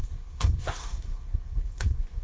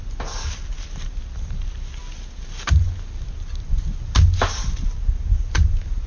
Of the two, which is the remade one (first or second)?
first